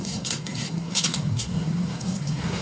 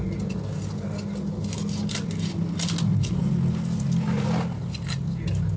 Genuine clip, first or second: second